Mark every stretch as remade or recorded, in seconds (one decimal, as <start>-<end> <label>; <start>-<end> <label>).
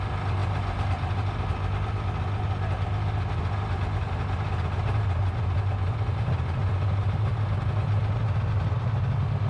0.0-9.5 recorded